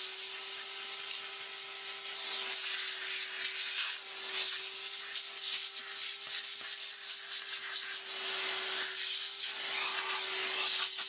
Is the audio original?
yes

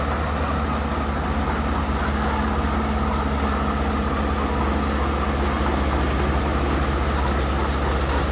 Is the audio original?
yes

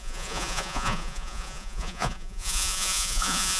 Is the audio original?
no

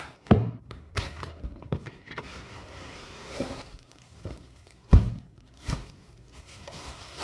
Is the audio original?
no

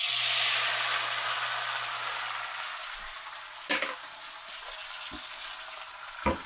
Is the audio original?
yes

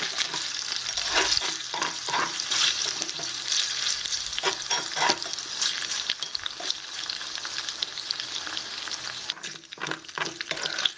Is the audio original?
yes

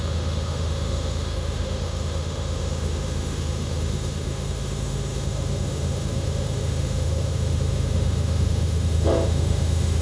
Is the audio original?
no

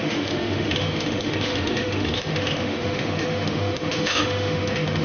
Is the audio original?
no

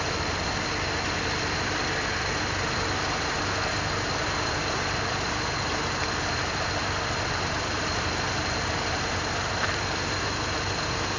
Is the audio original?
yes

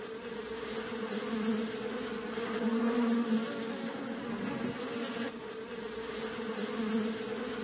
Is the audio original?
yes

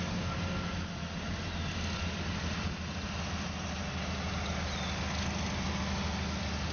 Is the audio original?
yes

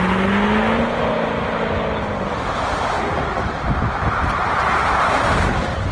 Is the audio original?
yes